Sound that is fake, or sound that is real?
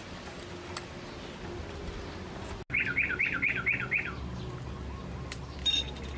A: real